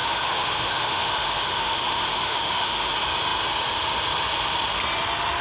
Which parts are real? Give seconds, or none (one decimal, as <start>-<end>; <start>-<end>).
2.9-5.4